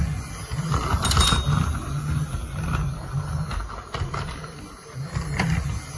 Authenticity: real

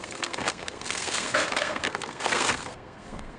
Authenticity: fake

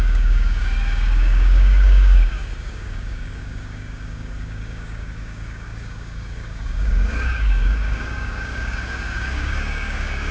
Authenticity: fake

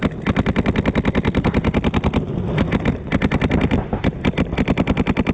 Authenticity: real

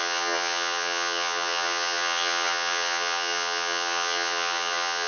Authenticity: fake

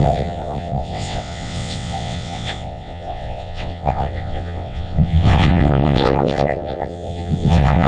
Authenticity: fake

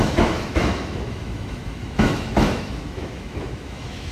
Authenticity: fake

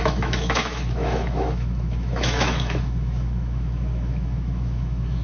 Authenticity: fake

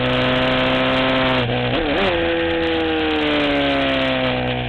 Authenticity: real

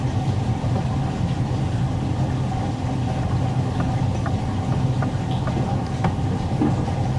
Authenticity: real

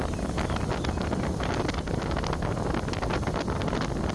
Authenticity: real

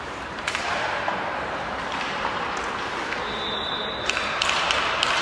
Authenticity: fake